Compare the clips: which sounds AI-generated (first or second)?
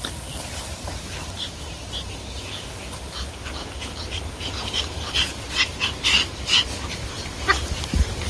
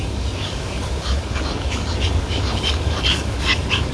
second